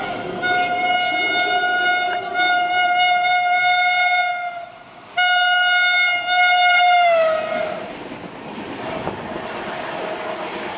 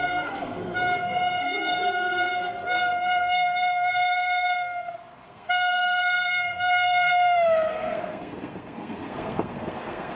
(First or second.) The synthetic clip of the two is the second